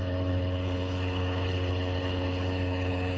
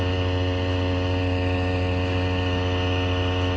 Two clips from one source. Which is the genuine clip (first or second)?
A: second